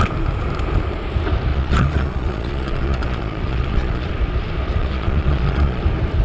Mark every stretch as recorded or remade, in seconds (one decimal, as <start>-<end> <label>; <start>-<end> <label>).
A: 0.0-1.5 recorded; 1.5-4.1 remade; 4.1-4.8 recorded; 4.8-5.8 remade; 5.8-6.2 recorded